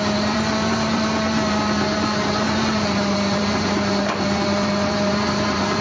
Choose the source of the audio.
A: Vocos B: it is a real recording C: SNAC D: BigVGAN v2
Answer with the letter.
D